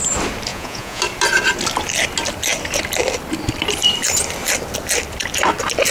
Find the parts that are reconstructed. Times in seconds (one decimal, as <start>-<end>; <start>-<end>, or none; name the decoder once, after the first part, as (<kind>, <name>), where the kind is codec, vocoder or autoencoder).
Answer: 0.5-1.0 (vocoder, Vocos)